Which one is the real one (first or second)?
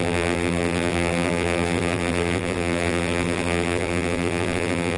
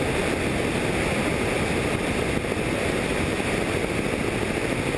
second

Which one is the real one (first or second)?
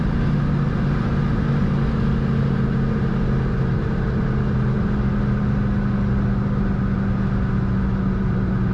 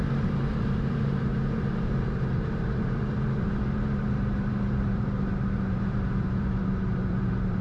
first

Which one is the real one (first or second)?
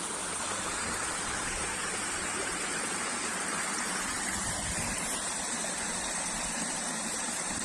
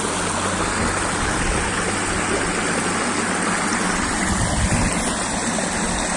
second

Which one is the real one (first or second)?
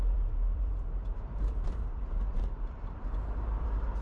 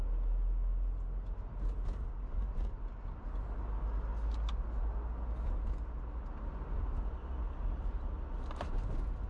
second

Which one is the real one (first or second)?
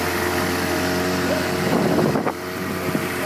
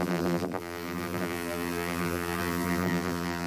first